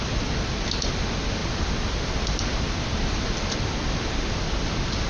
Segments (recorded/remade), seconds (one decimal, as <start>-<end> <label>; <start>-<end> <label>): 0.0-5.1 recorded